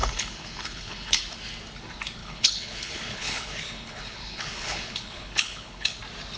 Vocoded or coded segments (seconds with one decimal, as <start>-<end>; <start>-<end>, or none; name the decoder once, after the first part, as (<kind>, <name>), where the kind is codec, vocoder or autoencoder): 0.0-1.2 (codec, HILCodec); 2.2-6.0